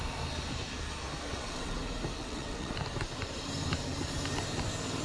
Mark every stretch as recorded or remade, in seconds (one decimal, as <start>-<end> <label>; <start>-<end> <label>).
0.0-1.3 recorded; 1.3-1.8 remade; 1.8-2.2 recorded; 2.2-2.7 remade; 2.7-5.0 recorded

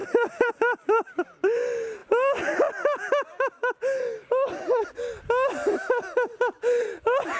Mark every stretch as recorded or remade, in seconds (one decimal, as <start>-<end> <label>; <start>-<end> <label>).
0.0-0.5 remade; 0.5-7.4 recorded

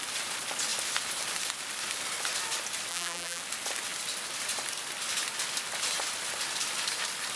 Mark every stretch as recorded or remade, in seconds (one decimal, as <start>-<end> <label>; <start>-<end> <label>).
0.0-2.9 recorded; 2.9-3.4 remade; 3.4-7.4 recorded

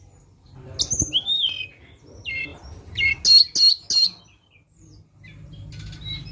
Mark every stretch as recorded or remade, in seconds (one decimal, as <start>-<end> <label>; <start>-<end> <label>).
0.0-6.3 recorded

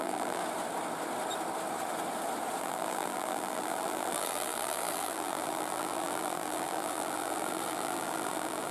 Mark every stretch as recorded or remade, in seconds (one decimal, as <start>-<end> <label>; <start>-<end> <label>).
0.0-0.4 remade; 0.4-2.6 recorded; 2.6-8.7 remade

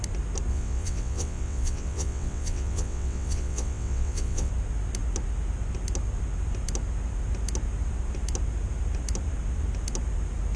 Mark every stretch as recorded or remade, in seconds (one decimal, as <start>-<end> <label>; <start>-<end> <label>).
0.0-0.5 recorded; 0.5-4.5 remade; 4.5-10.6 recorded